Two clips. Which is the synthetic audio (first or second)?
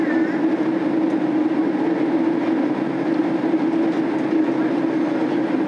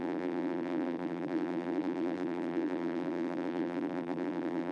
second